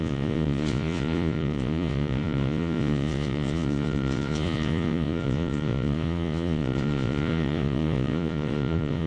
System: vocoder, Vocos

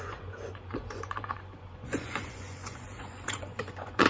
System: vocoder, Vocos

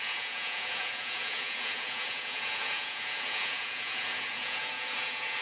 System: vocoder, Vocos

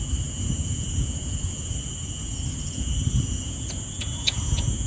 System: vocoder, Vocos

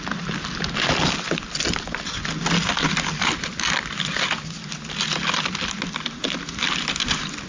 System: none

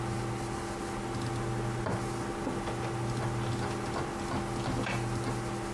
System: none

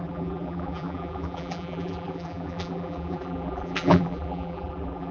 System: vocoder, BigVGAN v2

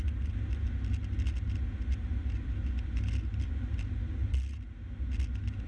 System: none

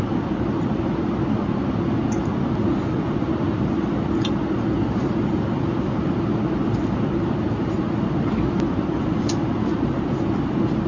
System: none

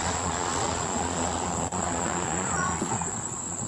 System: vocoder, Vocos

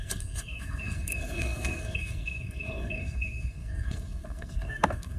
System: codec, SNAC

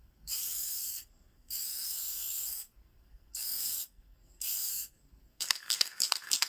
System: codec, SNAC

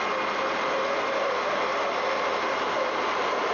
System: none